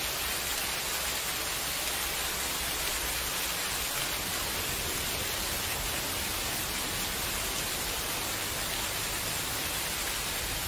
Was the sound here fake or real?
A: real